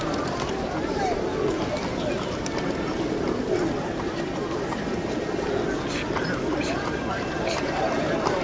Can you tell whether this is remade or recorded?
recorded